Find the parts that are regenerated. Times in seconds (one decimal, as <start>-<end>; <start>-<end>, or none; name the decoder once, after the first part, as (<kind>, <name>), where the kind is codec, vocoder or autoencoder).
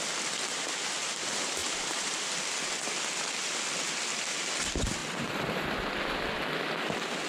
1.6-2.3 (vocoder, BigVGAN v2); 5.0-5.6